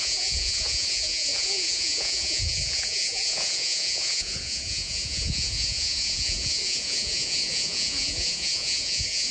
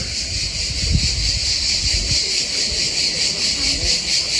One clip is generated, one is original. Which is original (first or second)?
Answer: second